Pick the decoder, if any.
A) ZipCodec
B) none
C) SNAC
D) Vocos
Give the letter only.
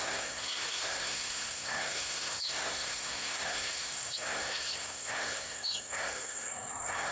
C